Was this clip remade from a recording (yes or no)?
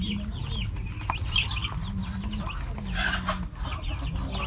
no